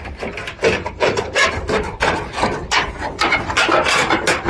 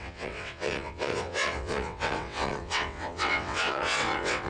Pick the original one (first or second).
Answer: first